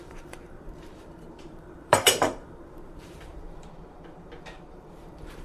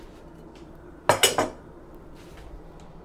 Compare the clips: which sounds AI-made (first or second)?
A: first